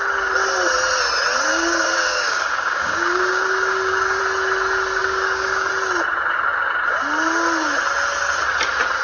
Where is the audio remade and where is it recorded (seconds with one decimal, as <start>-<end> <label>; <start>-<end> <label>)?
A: 0.0-1.5 recorded; 1.5-4.2 remade; 4.2-5.0 recorded; 5.0-5.7 remade; 5.7-9.0 recorded